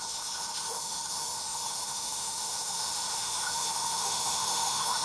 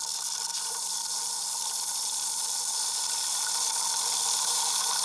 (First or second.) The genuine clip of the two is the second